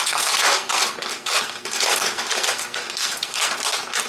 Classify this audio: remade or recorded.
remade